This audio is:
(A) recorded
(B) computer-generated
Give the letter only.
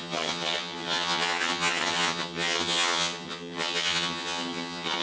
B